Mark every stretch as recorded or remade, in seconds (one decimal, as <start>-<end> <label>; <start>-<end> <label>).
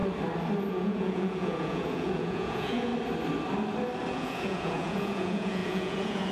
0.0-0.7 recorded; 0.7-2.9 remade; 2.9-4.1 recorded; 4.1-6.3 remade